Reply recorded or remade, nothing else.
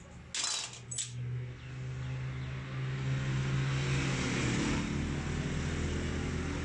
recorded